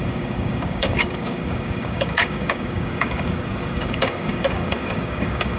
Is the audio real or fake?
fake